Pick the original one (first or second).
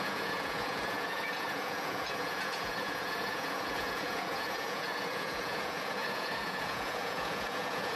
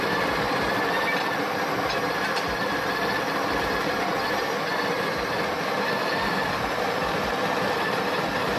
second